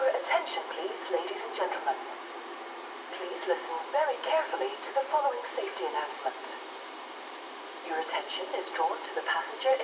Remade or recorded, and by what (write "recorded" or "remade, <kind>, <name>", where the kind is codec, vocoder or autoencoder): remade, vocoder, BigVGAN v2